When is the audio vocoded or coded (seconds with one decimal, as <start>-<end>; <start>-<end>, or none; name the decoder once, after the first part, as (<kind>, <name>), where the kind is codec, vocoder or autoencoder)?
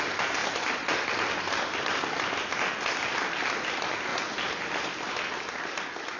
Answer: none